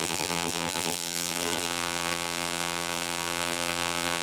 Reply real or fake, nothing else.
fake